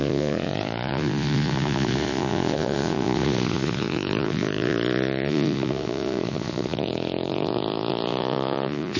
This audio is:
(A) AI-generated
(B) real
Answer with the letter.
A